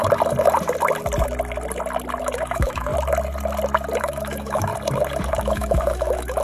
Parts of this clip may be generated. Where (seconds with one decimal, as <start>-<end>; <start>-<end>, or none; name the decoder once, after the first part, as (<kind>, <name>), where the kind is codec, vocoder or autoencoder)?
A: 2.2-2.9 (autoencoder, DAC-VAE); 4.0-4.7; 5.3-6.4